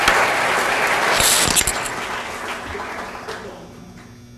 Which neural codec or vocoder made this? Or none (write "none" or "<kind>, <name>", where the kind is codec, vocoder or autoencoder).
none